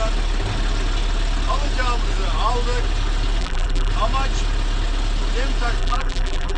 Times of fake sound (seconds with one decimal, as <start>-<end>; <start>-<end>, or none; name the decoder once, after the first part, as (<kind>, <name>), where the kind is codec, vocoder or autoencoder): 3.4-3.9 (vocoder, BigVGAN v2); 5.8-6.6